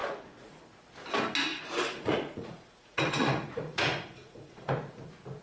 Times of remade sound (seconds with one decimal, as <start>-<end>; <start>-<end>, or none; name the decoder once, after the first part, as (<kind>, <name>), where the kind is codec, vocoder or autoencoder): 0.0-0.6 (vocoder, Vocos); 1.5-4.7

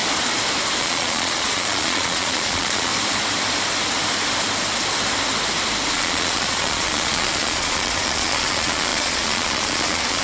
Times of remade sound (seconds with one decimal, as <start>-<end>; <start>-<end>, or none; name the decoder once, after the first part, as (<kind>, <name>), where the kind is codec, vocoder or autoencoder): 0.8-2.9 (vocoder, Vocos); 5.9-10.2

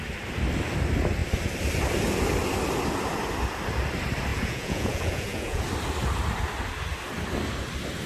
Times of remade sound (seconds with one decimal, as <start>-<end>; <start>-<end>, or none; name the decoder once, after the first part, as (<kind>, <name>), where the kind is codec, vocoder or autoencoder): 4.3-5.6 (vocoder, Vocos)

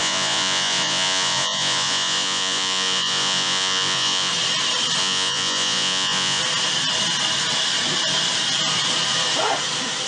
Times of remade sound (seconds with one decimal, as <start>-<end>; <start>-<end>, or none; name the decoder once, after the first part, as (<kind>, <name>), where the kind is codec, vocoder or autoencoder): 0.0-4.3 (vocoder, Vocos); 5.0-6.4

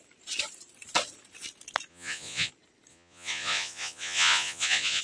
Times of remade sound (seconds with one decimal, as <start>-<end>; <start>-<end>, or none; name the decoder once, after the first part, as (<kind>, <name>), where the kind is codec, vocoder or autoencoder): 1.9-2.5 (vocoder, Vocos); 2.9-5.0

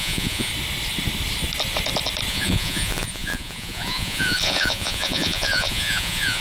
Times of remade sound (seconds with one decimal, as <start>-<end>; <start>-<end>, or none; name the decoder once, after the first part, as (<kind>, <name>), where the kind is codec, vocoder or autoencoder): 0.0-0.5 (vocoder, Vocos); 2.3-6.4

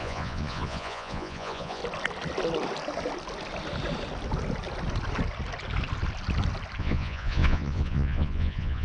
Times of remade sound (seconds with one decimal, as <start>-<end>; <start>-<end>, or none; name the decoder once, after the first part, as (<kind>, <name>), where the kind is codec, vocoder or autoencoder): 0.0-1.8 (vocoder, Vocos); 6.8-8.8